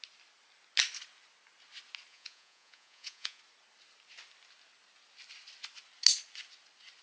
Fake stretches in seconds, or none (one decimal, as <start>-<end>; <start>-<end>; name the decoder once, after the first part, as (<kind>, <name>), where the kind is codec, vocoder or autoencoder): 2.1-3.4 (vocoder, Vocos)